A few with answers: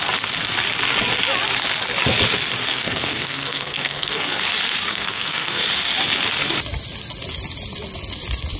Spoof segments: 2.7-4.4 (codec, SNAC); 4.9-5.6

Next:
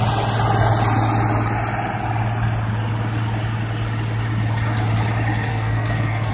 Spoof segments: 5.5-6.3 (codec, SNAC)

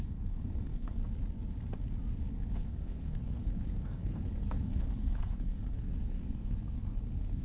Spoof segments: 0.0-1.0 (codec, SNAC); 2.3-7.4

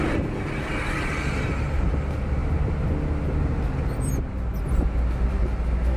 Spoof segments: none

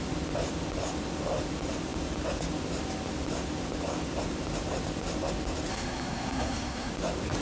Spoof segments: 5.7-6.9 (codec, SNAC)